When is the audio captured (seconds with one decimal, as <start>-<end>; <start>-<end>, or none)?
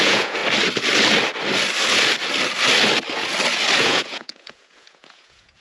0.4-3.8